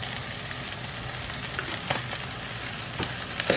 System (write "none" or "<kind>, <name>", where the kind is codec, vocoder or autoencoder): none